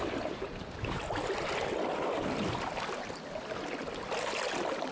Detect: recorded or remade recorded